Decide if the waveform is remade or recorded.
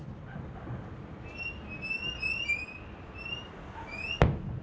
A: recorded